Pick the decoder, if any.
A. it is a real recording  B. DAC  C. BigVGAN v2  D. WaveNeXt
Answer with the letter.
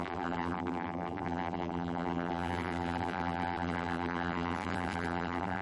C